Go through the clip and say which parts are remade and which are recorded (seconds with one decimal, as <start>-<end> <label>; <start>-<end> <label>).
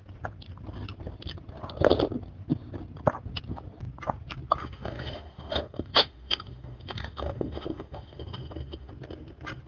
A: 0.0-4.6 recorded; 4.6-8.9 remade; 8.9-9.7 recorded